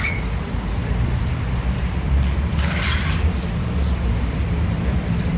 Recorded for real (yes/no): no